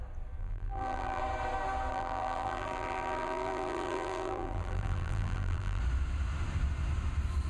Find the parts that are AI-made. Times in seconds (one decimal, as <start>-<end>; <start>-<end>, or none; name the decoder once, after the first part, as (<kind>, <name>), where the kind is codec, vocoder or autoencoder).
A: 0.4-1.2 (vocoder, BigVGAN v2); 1.9-5.8